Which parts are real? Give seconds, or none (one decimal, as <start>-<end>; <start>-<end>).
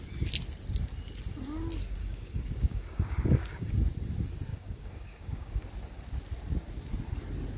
0.0-2.0; 3.7-4.5; 5.7-7.6